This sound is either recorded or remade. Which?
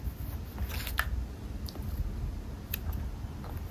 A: recorded